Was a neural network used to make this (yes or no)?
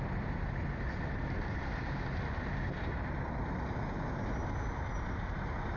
no